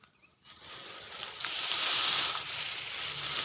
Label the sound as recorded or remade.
recorded